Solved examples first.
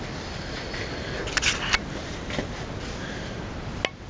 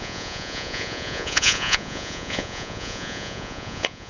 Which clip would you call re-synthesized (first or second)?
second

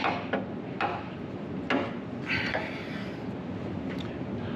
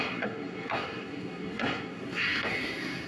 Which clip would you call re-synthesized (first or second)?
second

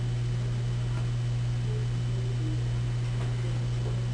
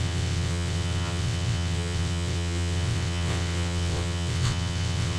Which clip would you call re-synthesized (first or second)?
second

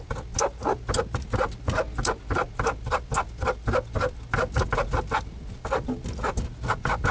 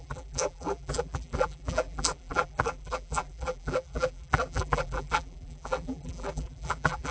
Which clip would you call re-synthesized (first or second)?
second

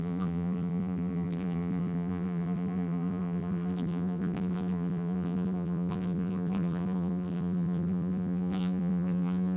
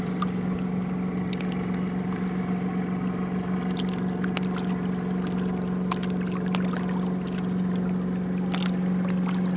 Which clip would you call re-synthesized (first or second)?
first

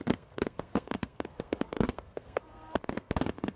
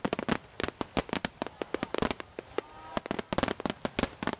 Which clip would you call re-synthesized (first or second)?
first